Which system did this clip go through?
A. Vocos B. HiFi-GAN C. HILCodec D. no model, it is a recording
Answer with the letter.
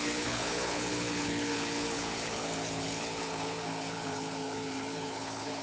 C